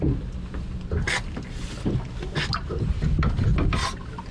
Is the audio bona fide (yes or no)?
yes